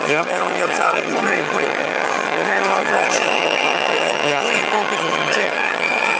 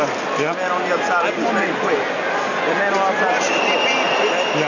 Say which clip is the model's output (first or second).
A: first